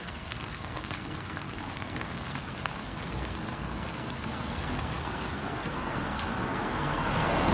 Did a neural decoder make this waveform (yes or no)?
yes